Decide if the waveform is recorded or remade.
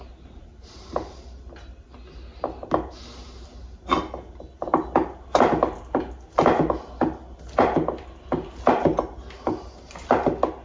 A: recorded